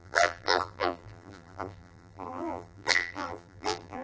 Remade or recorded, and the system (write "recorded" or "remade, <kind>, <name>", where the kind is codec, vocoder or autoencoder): remade, vocoder, BigVGAN v2